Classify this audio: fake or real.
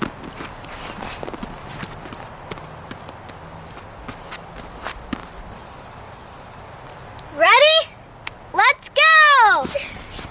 real